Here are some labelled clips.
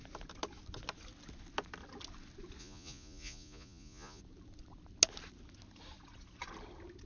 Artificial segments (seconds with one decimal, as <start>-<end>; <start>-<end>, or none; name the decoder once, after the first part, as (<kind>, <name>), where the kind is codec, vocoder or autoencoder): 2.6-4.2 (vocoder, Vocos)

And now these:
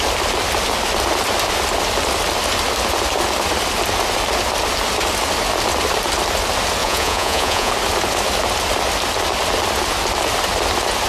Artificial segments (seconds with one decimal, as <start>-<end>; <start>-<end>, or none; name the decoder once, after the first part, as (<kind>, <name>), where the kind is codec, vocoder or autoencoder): 6.8-7.7 (vocoder, Vocos)

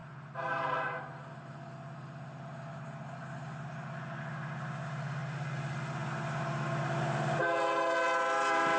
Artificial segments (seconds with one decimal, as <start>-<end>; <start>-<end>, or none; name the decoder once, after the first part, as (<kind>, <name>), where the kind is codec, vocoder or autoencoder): none